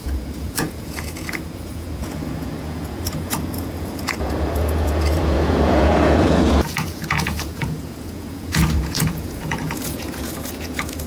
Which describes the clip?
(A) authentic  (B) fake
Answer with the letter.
B